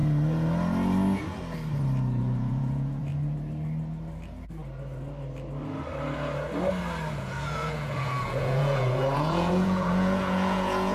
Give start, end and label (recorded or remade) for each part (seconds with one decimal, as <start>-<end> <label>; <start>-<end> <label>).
0.0-2.2 recorded; 2.2-3.1 remade; 3.1-7.1 recorded; 7.1-10.9 remade